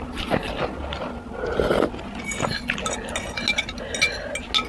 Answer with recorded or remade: recorded